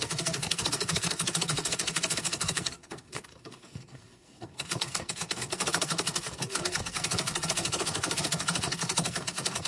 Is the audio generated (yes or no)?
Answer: yes